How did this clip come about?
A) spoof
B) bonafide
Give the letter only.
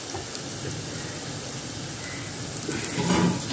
B